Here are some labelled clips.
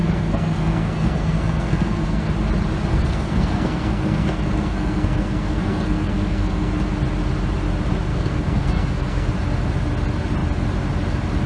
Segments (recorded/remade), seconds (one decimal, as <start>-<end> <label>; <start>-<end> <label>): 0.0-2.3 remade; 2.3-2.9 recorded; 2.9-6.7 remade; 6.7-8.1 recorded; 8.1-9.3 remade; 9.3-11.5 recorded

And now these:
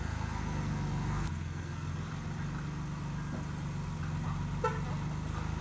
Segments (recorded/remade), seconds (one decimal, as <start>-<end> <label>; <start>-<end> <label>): 0.0-1.9 remade; 1.9-5.6 recorded

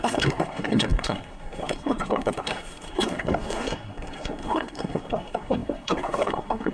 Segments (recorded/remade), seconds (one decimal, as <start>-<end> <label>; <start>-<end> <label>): 0.0-6.7 remade

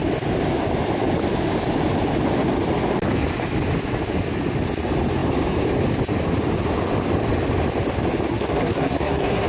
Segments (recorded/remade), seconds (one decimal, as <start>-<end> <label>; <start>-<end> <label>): 0.0-8.3 recorded; 8.3-9.5 remade

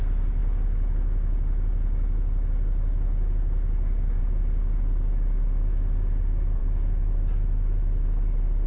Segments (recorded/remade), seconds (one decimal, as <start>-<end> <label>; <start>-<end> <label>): 0.0-8.7 recorded

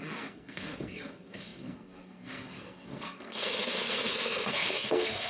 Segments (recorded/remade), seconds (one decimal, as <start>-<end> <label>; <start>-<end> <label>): 0.0-5.3 remade